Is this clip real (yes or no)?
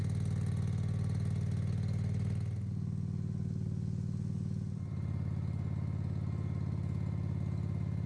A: yes